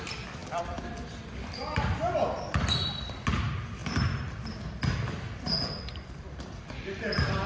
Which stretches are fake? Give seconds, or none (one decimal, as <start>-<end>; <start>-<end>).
0.0-3.8; 5.8-7.5